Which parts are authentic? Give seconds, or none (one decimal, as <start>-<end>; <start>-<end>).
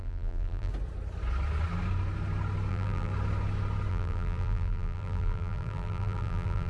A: 0.7-2.7; 3.1-3.9